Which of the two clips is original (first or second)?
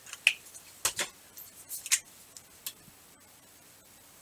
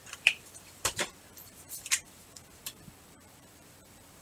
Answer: first